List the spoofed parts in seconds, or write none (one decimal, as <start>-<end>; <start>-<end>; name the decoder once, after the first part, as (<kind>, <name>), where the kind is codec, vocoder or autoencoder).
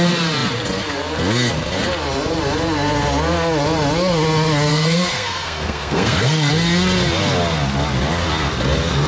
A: 4.7-6.5 (codec, SNAC)